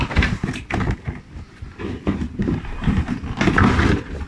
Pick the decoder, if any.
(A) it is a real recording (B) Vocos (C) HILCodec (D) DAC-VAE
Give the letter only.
A